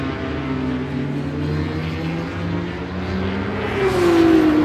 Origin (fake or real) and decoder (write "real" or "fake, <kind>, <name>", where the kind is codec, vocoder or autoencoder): real